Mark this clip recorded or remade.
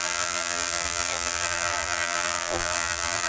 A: remade